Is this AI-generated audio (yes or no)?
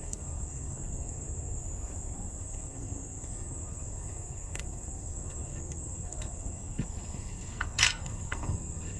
yes